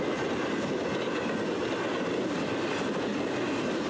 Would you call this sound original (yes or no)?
yes